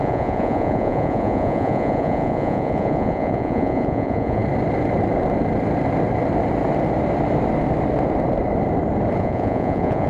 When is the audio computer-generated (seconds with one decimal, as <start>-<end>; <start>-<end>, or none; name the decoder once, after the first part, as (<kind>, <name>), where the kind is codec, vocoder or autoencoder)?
0.0-4.4 (vocoder, Vocos); 9.2-10.1